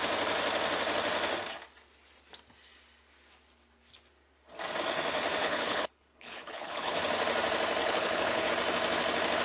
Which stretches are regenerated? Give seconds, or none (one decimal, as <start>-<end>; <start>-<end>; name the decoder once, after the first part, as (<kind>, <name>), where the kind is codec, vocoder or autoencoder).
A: 5.4-7.0 (codec, HILCodec); 7.8-8.5